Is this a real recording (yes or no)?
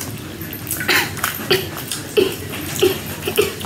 yes